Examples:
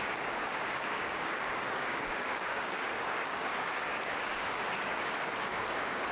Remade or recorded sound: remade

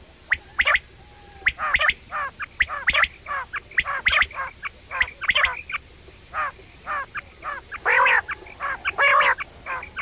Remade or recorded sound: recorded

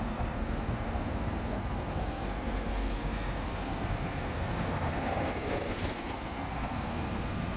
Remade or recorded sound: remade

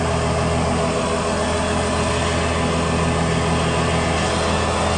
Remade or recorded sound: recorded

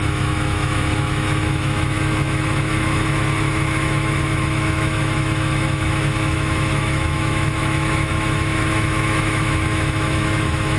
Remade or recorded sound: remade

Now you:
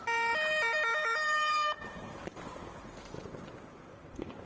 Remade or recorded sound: remade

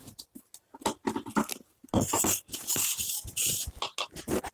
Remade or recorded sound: recorded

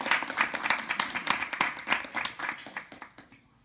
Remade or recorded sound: recorded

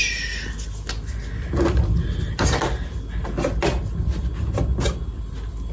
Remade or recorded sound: recorded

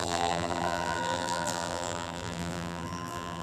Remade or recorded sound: remade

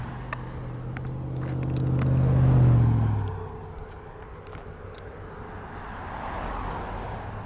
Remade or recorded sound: recorded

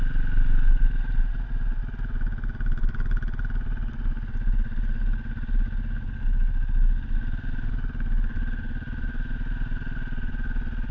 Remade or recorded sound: recorded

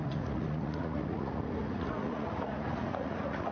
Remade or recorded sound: remade